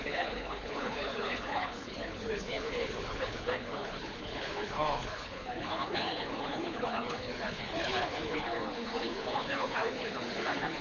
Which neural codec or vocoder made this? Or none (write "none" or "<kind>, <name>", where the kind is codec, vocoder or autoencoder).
codec, HILCodec